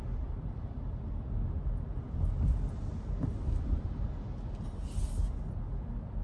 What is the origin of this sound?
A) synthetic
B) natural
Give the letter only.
B